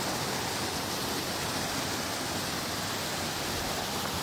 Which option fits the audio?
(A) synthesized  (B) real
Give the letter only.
B